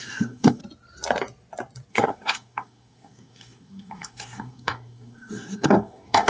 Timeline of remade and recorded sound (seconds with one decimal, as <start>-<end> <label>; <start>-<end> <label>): 0.0-0.6 remade; 0.6-1.9 recorded; 1.9-6.3 remade